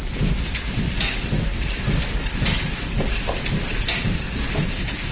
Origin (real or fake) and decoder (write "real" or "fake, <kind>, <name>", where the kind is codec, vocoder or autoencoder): fake, vocoder, BigVGAN v2